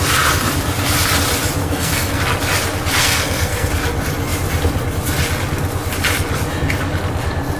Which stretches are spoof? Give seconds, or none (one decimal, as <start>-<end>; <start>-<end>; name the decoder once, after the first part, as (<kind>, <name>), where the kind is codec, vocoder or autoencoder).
1.6-2.2 (codec, SNAC); 3.0-3.7